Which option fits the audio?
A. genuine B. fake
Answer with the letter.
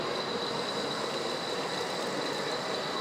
A